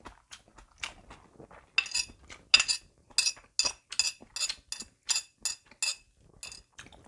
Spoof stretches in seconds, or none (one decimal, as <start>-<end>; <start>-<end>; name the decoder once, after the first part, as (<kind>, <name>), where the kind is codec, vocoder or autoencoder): none